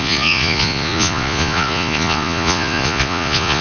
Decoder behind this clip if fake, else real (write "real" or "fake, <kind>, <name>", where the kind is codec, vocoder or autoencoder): fake, vocoder, Vocos